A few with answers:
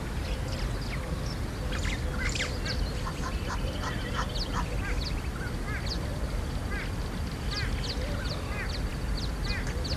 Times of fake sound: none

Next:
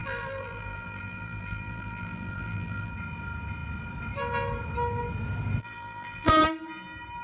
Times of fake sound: 0.0-2.9 (vocoder, BigVGAN v2); 5.6-6.3

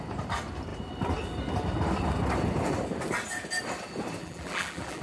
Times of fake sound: 4.2-5.0 (vocoder, BigVGAN v2)